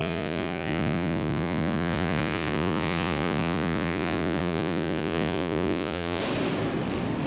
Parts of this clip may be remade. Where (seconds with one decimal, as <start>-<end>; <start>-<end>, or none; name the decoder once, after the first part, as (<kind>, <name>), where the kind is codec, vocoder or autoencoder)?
0.0-6.2 (vocoder, Vocos)